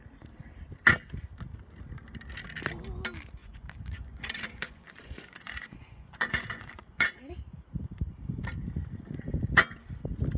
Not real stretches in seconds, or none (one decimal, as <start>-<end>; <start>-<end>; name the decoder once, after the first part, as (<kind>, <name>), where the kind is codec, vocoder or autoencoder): 3.4-7.3 (vocoder, Vocos)